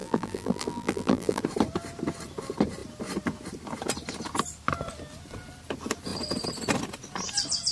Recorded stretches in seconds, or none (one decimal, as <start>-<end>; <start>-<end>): 1.4-7.7